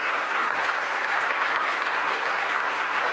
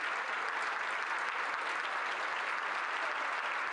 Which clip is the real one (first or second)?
second